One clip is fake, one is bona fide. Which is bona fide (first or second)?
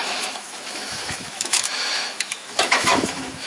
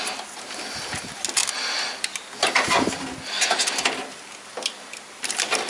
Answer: second